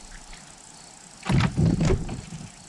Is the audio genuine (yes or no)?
yes